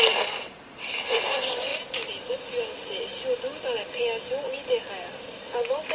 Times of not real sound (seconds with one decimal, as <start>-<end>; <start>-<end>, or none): 0.0-1.7; 5.2-5.9